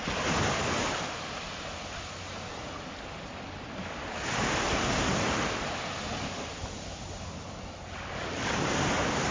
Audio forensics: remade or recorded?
recorded